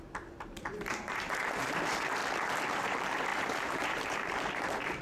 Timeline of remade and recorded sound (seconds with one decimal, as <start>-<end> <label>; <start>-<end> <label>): 0.0-2.2 remade; 2.2-2.7 recorded; 2.7-5.0 remade

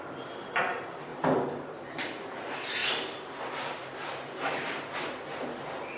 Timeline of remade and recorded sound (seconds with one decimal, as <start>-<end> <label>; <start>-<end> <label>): 0.0-6.0 recorded

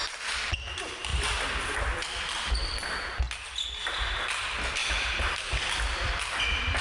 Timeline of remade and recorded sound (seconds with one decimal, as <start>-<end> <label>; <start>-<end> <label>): 0.0-1.1 recorded; 1.1-2.9 remade; 2.9-4.8 recorded; 4.8-5.6 remade; 5.6-6.8 recorded

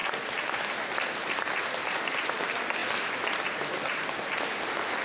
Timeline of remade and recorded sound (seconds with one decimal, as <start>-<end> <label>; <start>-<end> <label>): 0.0-1.4 recorded; 1.4-2.8 remade; 2.8-3.3 recorded; 3.3-5.0 remade

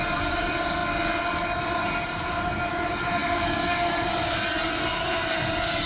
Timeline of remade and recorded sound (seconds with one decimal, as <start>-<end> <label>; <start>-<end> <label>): 0.0-0.8 remade; 0.8-1.6 recorded; 1.6-5.9 remade